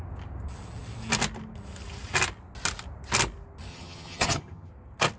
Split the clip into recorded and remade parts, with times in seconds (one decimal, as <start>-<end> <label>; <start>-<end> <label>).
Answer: 0.0-3.7 recorded; 3.7-4.7 remade; 4.7-5.2 recorded